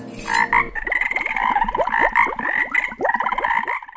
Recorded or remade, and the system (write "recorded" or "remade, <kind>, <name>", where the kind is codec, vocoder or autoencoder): recorded